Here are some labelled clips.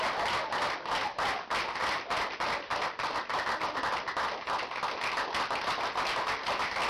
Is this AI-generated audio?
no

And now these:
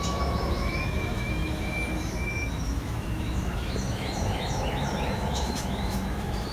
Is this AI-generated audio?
yes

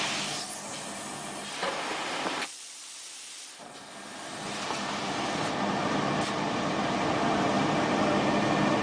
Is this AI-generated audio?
no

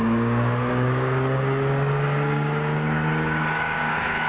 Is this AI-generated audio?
yes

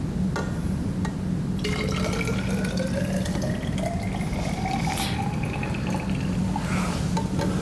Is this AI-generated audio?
no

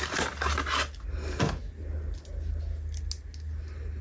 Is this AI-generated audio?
no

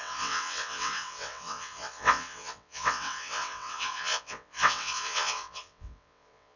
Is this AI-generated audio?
yes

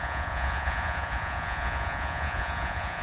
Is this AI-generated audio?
yes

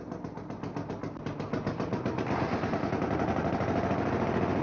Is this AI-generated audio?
no